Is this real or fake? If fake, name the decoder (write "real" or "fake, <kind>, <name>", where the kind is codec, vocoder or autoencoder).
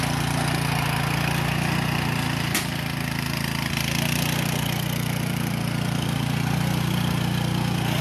real